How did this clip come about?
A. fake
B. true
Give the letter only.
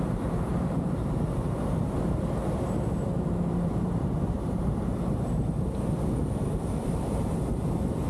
A